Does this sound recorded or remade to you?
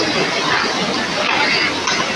recorded